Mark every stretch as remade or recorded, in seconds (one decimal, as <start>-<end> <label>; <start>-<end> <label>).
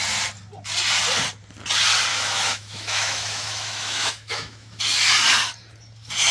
0.0-2.1 recorded; 2.1-4.8 remade; 4.8-6.3 recorded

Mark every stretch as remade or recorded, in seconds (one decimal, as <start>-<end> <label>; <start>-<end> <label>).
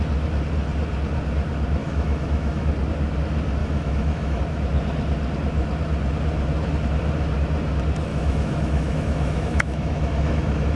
0.0-1.8 recorded; 1.8-2.7 remade; 2.7-3.6 recorded; 3.6-4.4 remade; 4.4-8.1 recorded; 8.1-10.8 remade